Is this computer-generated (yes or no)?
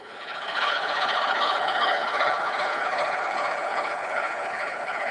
yes